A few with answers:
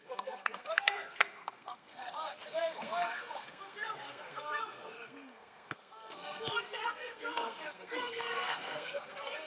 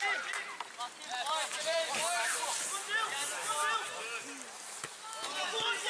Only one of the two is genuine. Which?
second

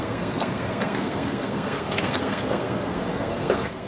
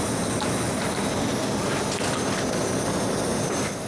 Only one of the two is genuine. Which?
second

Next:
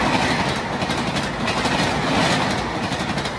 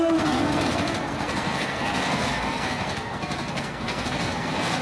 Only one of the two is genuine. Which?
first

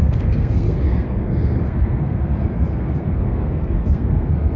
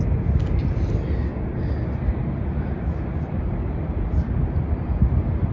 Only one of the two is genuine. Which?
second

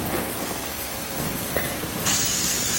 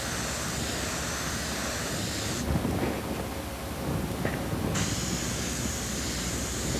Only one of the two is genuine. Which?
second